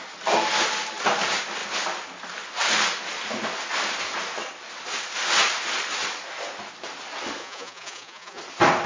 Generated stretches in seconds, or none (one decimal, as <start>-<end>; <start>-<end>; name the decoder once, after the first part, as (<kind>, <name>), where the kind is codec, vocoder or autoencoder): 7.4-8.4 (vocoder, Vocos)